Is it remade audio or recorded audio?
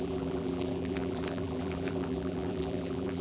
remade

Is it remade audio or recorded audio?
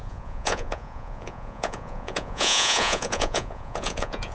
remade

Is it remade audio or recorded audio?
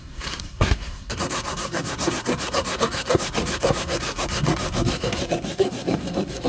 remade